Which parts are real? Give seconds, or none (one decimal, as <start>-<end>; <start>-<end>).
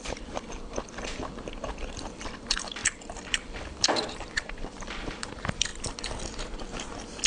5.7-7.3